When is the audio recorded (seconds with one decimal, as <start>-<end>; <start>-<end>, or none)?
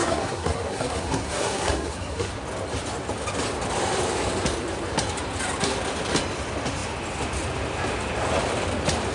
2.3-9.1